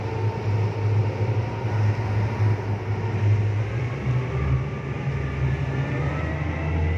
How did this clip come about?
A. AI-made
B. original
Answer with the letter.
B